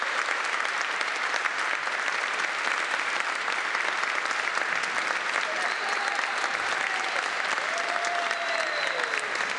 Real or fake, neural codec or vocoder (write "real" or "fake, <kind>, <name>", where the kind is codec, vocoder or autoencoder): fake, vocoder, BigVGAN v2